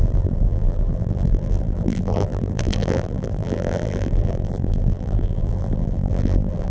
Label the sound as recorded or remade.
remade